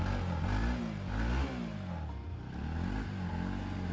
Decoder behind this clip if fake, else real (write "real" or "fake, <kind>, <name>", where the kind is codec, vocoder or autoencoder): real